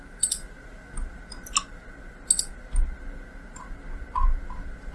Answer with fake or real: real